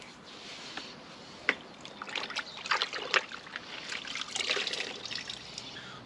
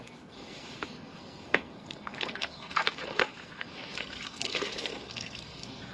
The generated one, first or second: second